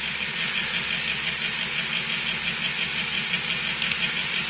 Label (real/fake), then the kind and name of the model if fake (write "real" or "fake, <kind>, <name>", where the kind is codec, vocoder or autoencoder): real